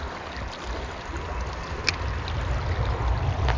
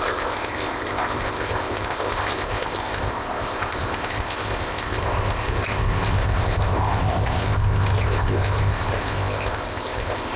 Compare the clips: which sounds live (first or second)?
first